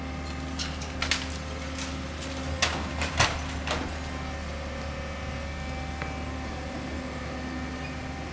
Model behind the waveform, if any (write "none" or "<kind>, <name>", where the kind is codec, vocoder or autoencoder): none